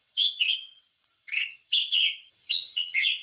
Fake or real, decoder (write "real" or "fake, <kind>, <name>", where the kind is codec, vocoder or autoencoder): fake, vocoder, WaveNeXt